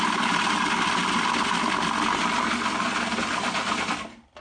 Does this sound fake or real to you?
fake